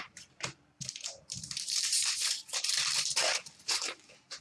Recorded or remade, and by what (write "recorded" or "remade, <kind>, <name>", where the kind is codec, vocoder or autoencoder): remade, vocoder, BigVGAN v2